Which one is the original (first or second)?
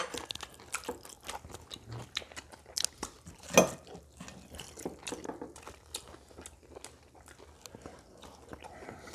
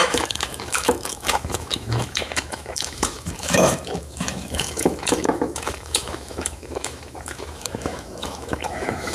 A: first